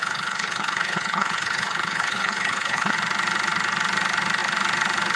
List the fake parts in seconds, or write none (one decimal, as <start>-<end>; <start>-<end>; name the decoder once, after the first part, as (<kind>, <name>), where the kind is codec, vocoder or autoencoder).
0.0-2.9 (codec, HILCodec)